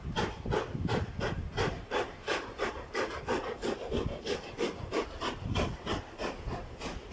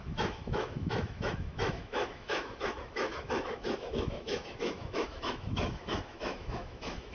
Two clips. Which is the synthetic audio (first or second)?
second